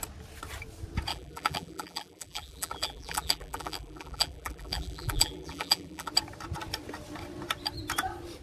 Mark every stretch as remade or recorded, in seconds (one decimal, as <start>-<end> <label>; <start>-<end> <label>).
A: 0.0-1.1 recorded; 1.1-6.1 remade; 6.1-8.4 recorded